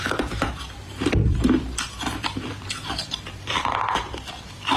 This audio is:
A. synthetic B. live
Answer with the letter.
A